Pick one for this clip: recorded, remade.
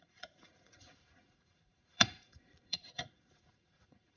remade